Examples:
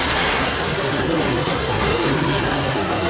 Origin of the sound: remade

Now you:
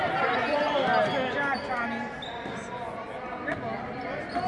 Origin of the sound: recorded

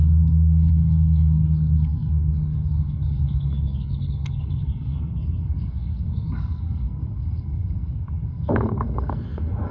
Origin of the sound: remade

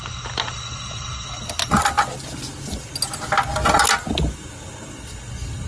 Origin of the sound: recorded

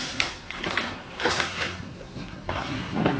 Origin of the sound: remade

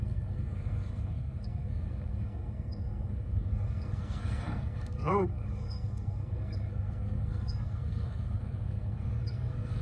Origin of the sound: remade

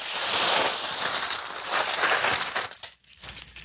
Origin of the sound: recorded